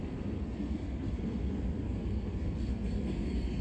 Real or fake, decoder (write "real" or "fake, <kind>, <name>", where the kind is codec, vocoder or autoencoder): fake, codec, SNAC